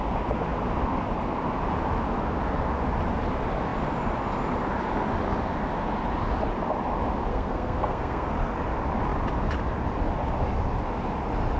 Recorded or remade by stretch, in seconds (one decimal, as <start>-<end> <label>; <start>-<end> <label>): 0.0-7.3 recorded; 7.3-8.3 remade; 8.3-11.6 recorded